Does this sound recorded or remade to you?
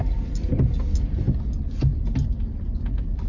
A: recorded